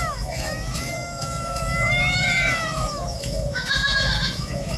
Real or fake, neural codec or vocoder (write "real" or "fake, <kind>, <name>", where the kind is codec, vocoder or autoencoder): fake, autoencoder, DAC-VAE